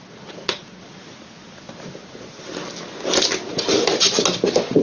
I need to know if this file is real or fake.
real